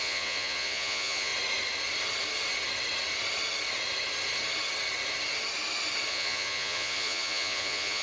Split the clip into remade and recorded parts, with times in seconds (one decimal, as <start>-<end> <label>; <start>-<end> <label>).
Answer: 0.0-1.3 remade; 1.3-6.1 recorded; 6.1-8.0 remade